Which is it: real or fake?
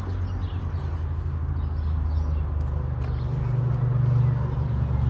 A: real